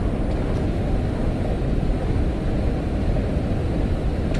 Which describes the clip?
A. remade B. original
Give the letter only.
B